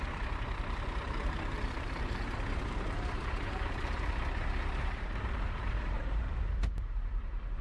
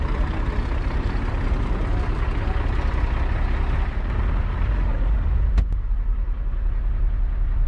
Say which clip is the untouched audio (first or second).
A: second